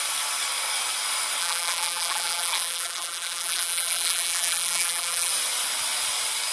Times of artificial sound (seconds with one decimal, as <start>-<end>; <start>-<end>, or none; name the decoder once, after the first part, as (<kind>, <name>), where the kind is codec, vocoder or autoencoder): 1.4-5.3 (vocoder, BigVGAN v2)